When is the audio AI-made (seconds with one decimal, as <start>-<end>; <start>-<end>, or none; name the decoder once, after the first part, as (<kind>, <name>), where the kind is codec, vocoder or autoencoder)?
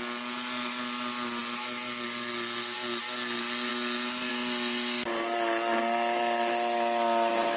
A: none